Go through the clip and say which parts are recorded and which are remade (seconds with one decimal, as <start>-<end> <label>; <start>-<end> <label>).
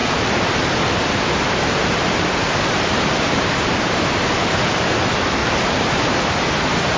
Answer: 0.0-4.1 remade; 4.1-5.4 recorded; 5.4-6.0 remade; 6.0-7.0 recorded